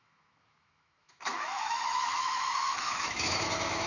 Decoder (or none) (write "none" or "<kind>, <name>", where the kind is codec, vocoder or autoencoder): autoencoder, DAC-VAE